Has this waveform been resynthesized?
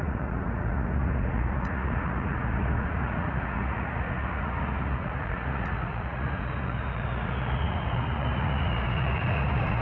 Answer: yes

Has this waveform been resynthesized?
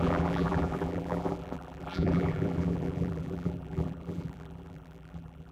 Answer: yes